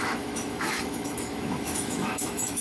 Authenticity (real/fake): fake